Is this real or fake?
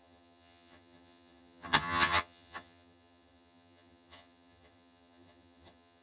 fake